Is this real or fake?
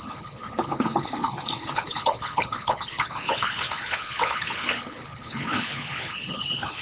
fake